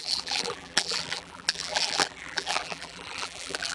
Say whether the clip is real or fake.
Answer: fake